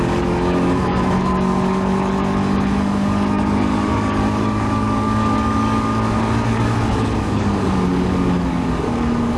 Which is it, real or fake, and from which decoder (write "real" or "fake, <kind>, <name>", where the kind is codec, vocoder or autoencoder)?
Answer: fake, codec, DAC